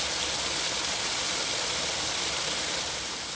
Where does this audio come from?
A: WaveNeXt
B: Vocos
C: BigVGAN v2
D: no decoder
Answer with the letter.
D